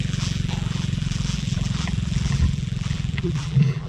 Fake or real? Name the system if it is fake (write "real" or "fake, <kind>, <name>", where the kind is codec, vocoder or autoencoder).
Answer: fake, vocoder, BigVGAN v2